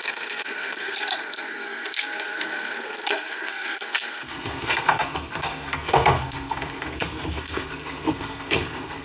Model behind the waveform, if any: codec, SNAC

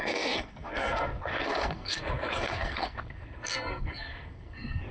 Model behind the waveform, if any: codec, SNAC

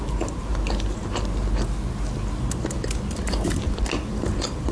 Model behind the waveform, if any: none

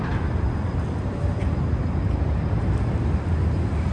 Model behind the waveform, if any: none